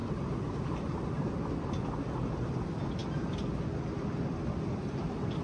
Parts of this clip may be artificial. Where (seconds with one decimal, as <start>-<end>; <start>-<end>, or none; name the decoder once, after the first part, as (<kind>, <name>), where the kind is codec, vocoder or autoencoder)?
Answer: none